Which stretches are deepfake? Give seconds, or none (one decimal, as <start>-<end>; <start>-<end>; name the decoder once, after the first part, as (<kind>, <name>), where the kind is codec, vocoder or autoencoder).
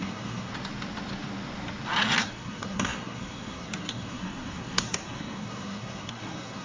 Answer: 0.0-0.5 (codec, SNAC); 2.2-6.6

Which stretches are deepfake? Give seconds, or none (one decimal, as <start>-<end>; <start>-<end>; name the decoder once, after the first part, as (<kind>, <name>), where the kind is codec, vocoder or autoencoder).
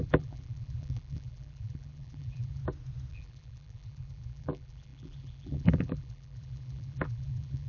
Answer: 0.0-2.6 (vocoder, BigVGAN v2); 3.1-7.7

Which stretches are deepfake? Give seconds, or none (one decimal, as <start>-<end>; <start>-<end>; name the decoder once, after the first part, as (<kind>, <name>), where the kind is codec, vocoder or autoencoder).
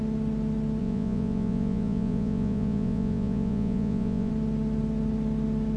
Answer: 0.8-4.3 (vocoder, Vocos)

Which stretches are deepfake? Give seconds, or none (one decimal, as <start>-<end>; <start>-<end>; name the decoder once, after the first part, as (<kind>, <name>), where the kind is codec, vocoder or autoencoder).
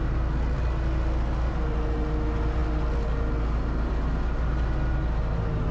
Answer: none